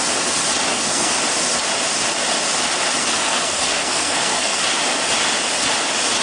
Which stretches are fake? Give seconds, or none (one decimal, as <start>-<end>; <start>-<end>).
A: 0.7-1.2; 3.0-4.6